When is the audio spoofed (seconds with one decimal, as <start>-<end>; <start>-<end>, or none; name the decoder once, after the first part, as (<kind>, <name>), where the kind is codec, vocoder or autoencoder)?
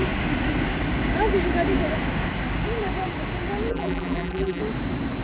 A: 3.7-4.6 (vocoder, BigVGAN v2)